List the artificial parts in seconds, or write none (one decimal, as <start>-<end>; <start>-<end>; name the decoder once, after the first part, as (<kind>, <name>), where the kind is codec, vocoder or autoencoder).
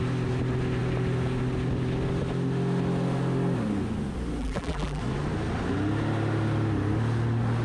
4.4-5.0 (vocoder, BigVGAN v2)